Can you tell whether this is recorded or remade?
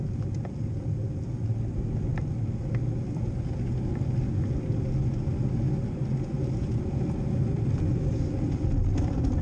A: recorded